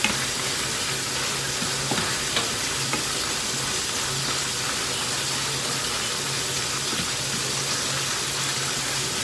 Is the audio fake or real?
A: real